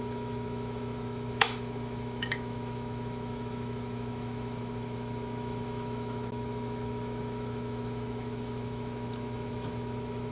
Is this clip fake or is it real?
fake